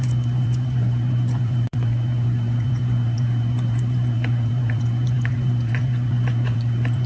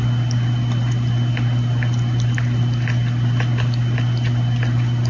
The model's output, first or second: first